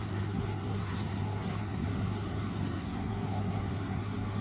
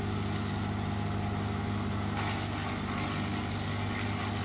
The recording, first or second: second